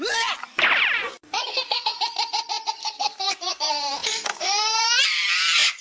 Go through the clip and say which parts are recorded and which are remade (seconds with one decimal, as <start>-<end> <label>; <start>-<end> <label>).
0.0-1.5 recorded; 1.5-2.0 remade; 2.0-2.8 recorded; 2.8-3.7 remade; 3.7-4.3 recorded; 4.3-4.8 remade; 4.8-5.8 recorded